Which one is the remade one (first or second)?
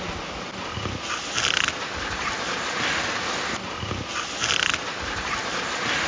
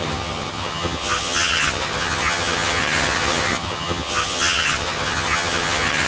second